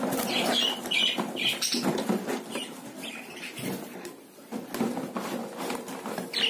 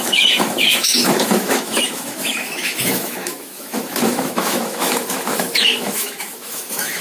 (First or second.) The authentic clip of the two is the first